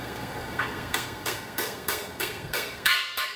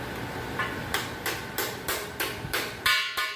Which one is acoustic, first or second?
second